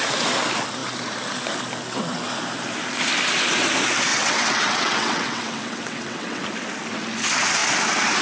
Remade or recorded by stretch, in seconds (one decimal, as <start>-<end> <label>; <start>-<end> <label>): 0.0-4.1 recorded; 4.1-6.4 remade; 6.4-8.2 recorded